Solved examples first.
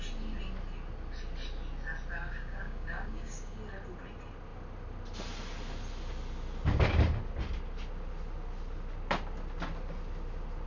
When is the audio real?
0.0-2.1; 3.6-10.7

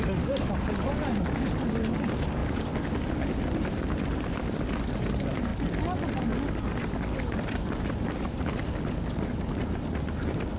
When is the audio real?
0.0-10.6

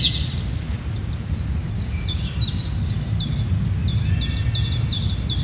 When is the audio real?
0.0-1.6; 2.2-5.4

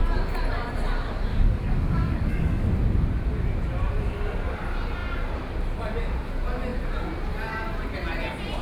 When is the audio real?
0.0-1.3; 2.7-8.6

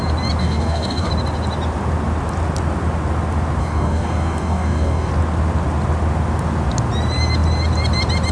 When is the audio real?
0.0-0.4; 1.1-3.6; 5.1-8.3